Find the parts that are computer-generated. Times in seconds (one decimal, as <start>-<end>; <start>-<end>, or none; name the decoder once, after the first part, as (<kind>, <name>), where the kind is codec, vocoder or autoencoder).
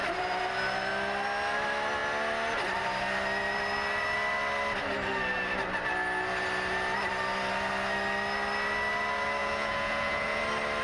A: 9.4-10.4 (vocoder, Vocos)